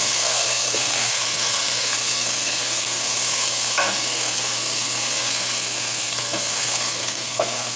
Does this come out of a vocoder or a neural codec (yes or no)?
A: yes